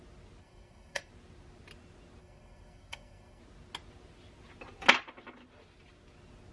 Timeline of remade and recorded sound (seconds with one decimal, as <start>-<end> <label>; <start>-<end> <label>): 0.0-0.4 recorded; 0.4-1.1 remade; 1.1-2.2 recorded; 2.2-3.4 remade; 3.4-6.5 recorded